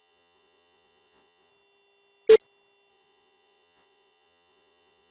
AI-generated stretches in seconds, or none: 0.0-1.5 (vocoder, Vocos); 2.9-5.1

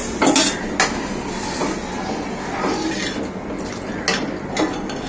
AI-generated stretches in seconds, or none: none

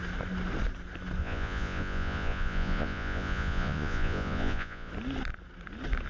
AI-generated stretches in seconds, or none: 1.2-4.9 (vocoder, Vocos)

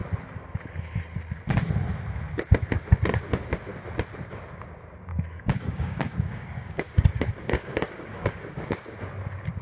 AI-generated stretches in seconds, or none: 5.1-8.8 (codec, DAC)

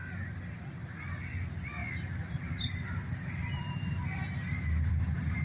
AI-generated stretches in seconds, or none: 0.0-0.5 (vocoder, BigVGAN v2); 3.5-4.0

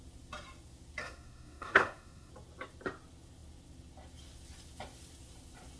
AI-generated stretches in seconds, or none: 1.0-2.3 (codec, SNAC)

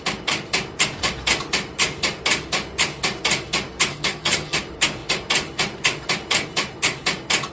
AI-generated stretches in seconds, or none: 3.9-4.6 (vocoder, HiFi-GAN)